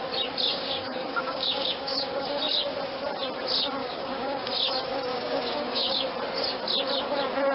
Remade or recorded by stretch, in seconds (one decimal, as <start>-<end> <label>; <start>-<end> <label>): 0.0-0.5 recorded; 0.5-2.4 remade; 2.4-3.8 recorded; 3.8-4.5 remade; 4.5-5.1 recorded; 5.1-6.1 remade; 6.1-7.5 recorded